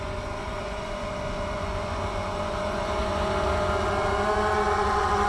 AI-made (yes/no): yes